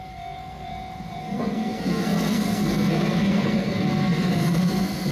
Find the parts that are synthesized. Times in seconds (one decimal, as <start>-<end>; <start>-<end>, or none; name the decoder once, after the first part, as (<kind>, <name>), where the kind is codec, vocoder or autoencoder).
0.0-0.7 (codec, SNAC); 1.2-5.1